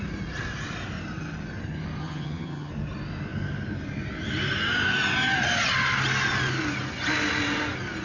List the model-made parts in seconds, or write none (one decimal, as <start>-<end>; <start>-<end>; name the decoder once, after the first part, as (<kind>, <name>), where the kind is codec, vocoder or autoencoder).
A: 2.0-2.7 (vocoder, HiFi-GAN)